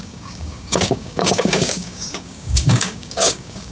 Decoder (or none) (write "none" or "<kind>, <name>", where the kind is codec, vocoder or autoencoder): codec, DAC